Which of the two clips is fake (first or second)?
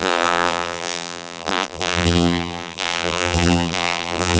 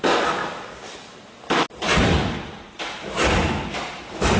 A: first